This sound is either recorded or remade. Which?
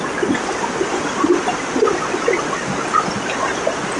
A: recorded